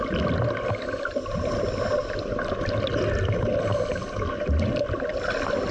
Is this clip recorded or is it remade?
recorded